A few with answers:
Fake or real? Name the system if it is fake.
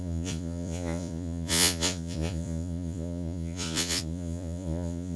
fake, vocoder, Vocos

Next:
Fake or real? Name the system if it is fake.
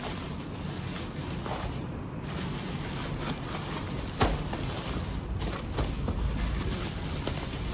real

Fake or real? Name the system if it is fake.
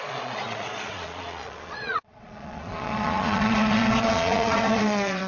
fake, vocoder, Vocos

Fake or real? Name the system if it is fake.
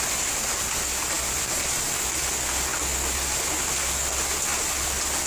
real